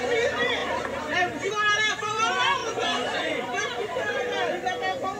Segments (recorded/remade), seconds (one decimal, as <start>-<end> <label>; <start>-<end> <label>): 0.0-0.6 recorded; 0.6-1.5 remade; 1.5-2.6 recorded; 2.6-4.2 remade; 4.2-5.2 recorded